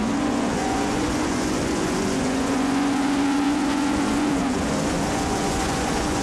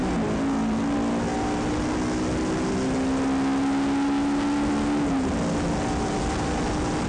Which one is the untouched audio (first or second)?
second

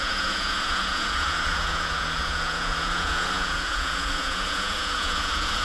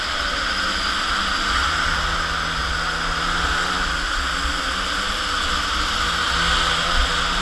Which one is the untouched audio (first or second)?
second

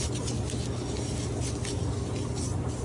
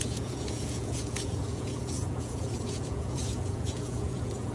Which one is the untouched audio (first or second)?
first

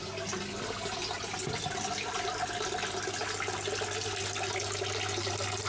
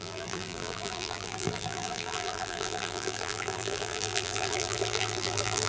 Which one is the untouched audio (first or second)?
first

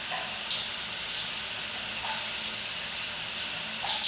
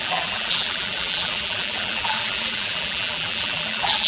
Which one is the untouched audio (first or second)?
first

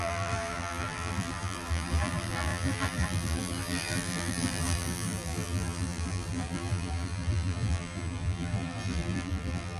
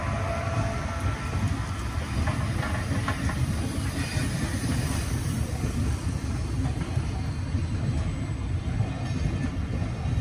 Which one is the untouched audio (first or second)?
second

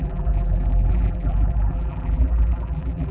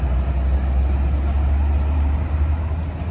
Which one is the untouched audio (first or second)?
second